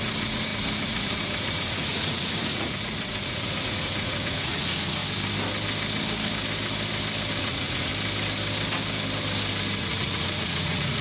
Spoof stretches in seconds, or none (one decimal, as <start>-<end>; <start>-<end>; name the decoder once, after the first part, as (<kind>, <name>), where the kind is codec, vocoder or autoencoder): 0.0-5.0 (vocoder, Vocos); 7.4-7.9; 9.8-11.0